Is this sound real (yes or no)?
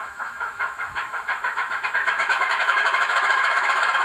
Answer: no